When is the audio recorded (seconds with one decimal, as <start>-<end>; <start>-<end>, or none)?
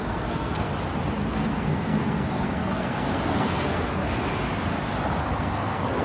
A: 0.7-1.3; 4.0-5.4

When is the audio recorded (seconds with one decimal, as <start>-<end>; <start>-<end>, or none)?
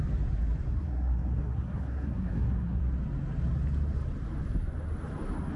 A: 0.0-0.8; 2.8-5.6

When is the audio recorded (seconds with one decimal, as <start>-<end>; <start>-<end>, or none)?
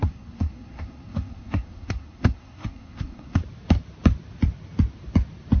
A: 3.4-5.6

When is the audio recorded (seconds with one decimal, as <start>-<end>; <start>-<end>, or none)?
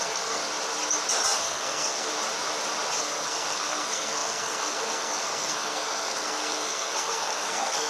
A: 0.4-1.4; 2.1-3.0